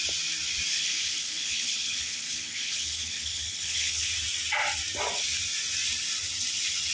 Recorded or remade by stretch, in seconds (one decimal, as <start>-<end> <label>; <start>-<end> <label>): 0.0-0.7 recorded; 0.7-4.1 remade; 4.1-6.9 recorded